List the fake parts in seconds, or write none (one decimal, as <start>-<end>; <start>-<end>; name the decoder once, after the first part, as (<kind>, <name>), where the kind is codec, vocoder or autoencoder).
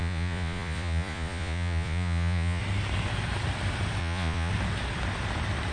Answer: 0.0-2.6 (vocoder, Vocos); 4.0-4.5